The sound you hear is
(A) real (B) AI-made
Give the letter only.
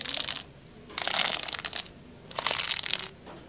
A